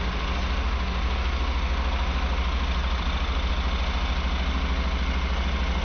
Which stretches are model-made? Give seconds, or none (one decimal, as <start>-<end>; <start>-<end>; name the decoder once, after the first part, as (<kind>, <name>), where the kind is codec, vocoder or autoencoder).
2.8-3.5 (vocoder, BigVGAN v2)